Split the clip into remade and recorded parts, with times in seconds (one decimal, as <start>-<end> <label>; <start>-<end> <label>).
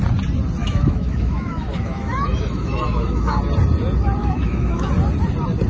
0.0-0.6 recorded; 0.6-3.4 remade; 3.4-4.2 recorded; 4.2-4.9 remade; 4.9-5.7 recorded